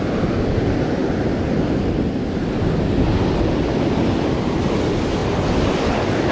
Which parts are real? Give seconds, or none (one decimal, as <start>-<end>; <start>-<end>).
0.0-6.3